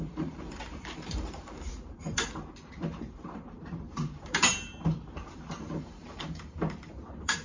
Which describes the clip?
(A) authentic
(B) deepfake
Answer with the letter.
B